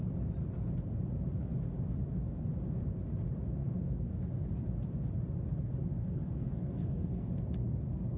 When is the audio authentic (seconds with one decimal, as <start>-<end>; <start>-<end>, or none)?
0.0-3.6; 4.2-6.0; 7.3-8.2